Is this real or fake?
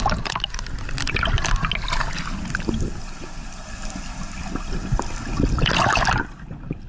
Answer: real